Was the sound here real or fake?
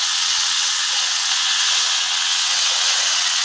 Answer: fake